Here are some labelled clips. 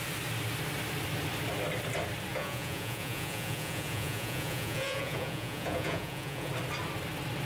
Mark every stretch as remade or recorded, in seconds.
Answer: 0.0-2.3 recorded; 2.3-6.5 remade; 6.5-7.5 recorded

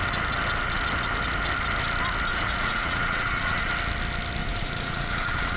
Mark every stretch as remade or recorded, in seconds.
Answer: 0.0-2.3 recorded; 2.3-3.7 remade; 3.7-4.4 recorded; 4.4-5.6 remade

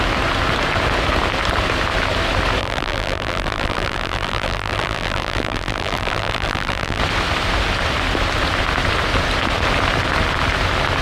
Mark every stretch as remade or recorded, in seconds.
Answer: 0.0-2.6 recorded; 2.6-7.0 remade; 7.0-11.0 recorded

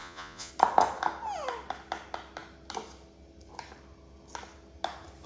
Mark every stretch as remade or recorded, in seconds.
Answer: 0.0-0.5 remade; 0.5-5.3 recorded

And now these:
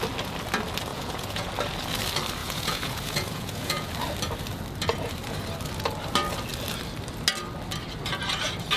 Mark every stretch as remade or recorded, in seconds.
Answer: 0.0-0.9 recorded; 0.9-1.5 remade; 1.5-2.4 recorded; 2.4-3.9 remade; 3.9-8.8 recorded